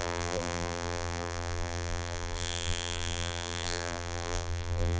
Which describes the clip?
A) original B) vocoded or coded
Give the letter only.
B